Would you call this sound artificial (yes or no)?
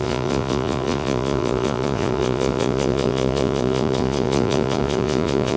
yes